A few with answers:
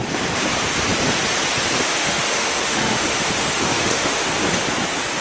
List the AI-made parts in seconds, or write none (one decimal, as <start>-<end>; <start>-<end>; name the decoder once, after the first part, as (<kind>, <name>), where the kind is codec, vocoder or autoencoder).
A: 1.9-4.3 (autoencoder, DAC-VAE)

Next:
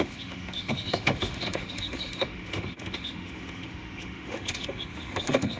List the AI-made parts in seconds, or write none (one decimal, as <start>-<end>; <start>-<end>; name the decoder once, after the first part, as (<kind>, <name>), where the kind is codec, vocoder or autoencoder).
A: 0.0-5.6 (autoencoder, DAC-VAE)

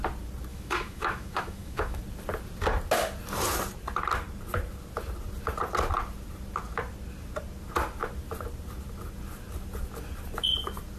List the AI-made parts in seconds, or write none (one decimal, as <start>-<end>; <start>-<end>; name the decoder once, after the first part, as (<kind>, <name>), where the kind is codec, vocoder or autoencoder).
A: 0.5-2.0 (autoencoder, DAC-VAE)

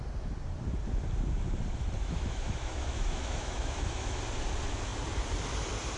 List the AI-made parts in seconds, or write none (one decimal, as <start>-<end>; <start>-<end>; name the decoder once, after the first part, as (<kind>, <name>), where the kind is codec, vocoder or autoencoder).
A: 2.0-4.2 (autoencoder, DAC-VAE)